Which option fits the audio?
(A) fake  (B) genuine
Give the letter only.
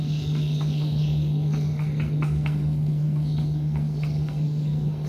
A